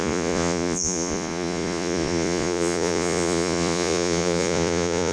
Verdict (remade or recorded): remade